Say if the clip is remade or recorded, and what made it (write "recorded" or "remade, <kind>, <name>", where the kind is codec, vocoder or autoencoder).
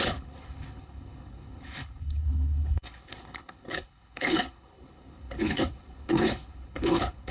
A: remade, codec, HILCodec